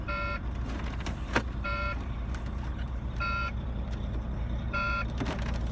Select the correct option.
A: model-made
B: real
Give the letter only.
A